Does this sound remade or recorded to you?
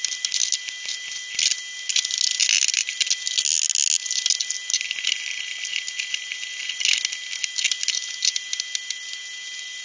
recorded